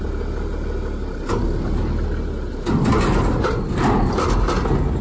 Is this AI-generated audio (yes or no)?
no